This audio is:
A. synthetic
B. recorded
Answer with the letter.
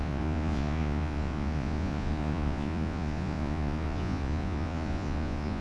A